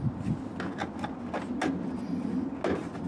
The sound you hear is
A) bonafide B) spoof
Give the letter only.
A